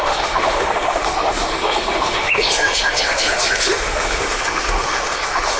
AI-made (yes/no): yes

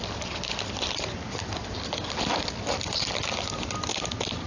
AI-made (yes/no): no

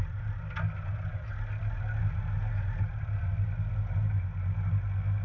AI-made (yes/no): no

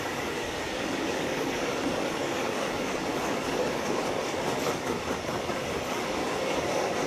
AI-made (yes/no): yes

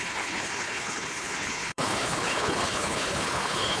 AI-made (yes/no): yes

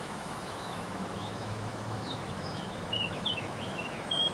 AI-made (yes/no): yes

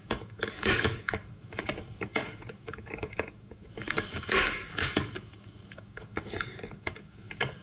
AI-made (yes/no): yes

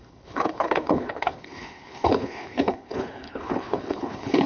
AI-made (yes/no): yes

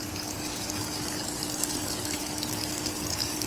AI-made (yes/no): yes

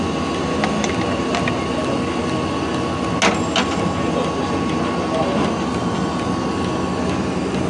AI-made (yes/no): no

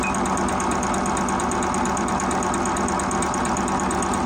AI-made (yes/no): no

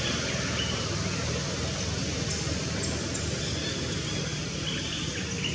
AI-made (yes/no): no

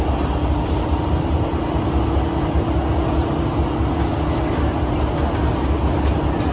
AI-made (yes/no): no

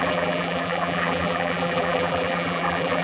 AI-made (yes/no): yes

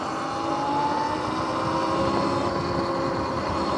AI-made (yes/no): no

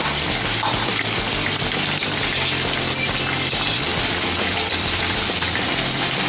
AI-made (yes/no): no